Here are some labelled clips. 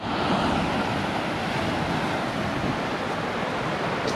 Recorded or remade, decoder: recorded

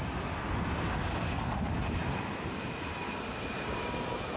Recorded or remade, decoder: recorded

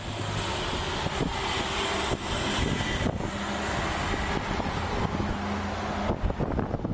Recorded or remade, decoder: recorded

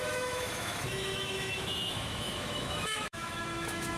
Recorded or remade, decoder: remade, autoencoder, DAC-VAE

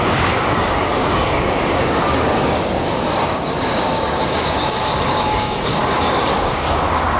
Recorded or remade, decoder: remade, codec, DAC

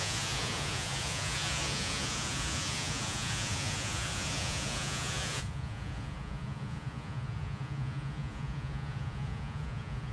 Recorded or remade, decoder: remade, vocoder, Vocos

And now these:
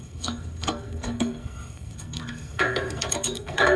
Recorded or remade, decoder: remade, codec, SNAC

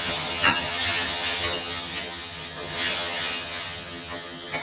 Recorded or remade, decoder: remade, vocoder, HiFi-GAN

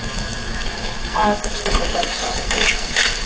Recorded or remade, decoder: remade, codec, SNAC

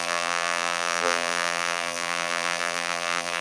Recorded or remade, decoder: remade, vocoder, BigVGAN v2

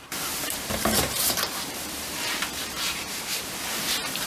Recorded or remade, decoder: remade, vocoder, BigVGAN v2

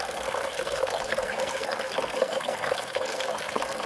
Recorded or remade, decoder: remade, codec, SNAC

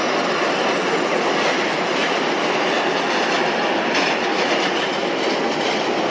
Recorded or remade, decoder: recorded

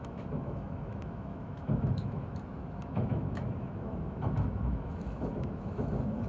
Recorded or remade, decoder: remade, autoencoder, DAC-VAE